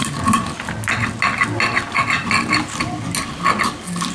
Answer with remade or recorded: recorded